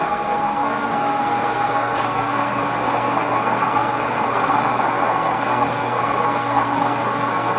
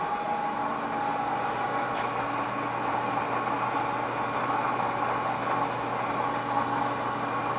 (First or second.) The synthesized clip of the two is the first